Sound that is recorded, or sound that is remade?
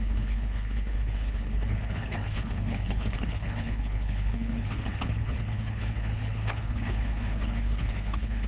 remade